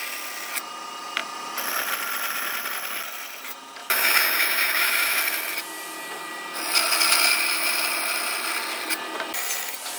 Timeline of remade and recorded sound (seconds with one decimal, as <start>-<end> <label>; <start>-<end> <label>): 0.0-3.8 recorded; 3.8-5.2 remade; 5.2-10.0 recorded